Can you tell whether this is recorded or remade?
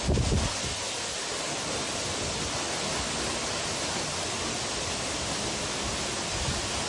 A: recorded